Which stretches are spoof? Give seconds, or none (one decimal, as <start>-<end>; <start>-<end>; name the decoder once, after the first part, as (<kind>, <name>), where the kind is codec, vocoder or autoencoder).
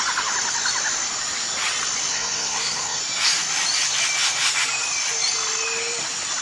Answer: 2.1-3.0 (codec, SNAC)